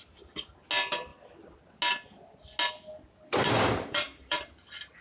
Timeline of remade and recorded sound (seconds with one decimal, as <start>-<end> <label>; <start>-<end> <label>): 0.0-3.4 recorded; 3.4-4.6 remade; 4.6-5.0 recorded